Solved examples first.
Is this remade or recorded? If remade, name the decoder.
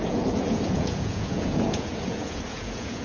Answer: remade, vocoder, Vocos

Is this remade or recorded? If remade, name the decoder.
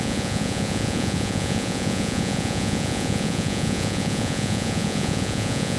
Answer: remade, vocoder, Vocos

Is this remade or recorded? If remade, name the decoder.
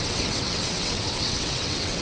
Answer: remade, vocoder, WaveNeXt